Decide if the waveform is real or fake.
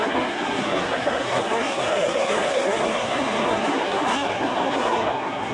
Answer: fake